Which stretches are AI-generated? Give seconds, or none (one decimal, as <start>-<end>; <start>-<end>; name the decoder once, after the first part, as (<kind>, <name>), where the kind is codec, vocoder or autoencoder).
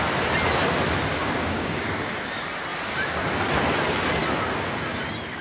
1.1-2.1 (codec, DAC)